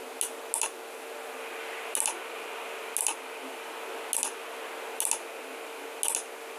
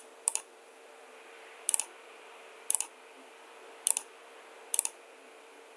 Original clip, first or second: first